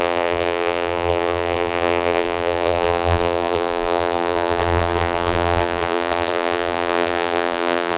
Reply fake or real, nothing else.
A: fake